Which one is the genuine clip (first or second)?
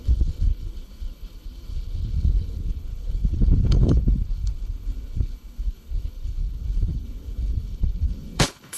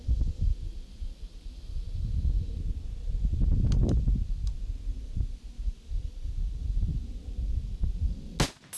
second